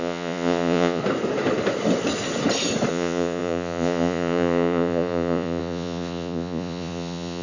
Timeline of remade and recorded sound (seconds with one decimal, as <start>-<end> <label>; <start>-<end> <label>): 0.0-1.0 remade; 1.0-2.9 recorded; 2.9-7.4 remade